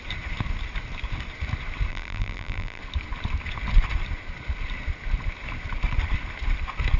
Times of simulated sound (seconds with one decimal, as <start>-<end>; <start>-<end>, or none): 1.9-2.8